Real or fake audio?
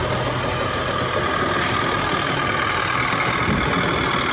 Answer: real